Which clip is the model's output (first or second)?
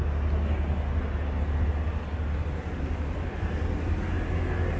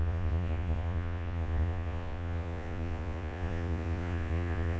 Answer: second